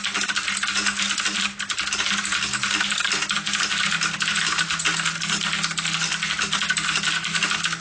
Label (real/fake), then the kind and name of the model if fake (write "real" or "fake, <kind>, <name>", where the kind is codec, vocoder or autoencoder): real